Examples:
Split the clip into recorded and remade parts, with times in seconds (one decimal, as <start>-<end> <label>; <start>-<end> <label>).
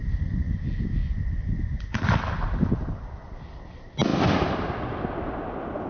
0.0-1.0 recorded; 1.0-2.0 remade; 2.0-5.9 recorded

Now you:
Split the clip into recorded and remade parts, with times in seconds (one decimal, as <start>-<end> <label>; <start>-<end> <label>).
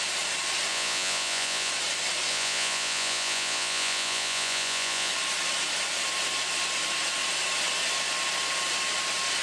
0.0-0.7 recorded; 0.7-1.7 remade; 1.7-2.3 recorded; 2.3-5.1 remade; 5.1-9.4 recorded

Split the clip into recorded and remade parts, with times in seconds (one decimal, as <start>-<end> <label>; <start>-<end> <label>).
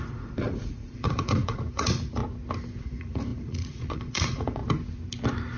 0.0-2.2 remade; 2.2-2.8 recorded; 2.8-4.6 remade; 4.6-5.6 recorded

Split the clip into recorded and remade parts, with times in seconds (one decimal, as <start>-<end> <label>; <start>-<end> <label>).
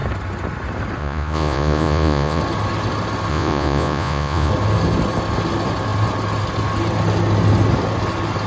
0.0-1.0 recorded; 1.0-2.4 remade; 2.4-3.3 recorded; 3.3-4.5 remade; 4.5-8.5 recorded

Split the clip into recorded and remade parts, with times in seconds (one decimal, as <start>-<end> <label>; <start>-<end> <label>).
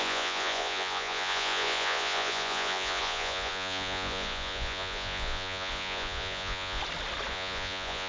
0.0-6.8 remade; 6.8-7.3 recorded; 7.3-8.1 remade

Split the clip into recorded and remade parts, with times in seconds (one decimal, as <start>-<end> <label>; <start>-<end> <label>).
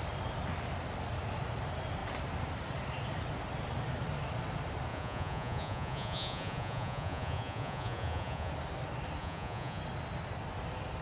0.0-4.9 recorded; 4.9-8.5 remade; 8.5-9.2 recorded; 9.2-9.8 remade; 9.8-11.0 recorded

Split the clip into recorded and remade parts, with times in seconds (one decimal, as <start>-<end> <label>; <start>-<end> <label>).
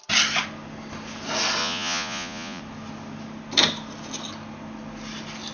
0.0-1.6 recorded; 1.6-2.6 remade; 2.6-5.5 recorded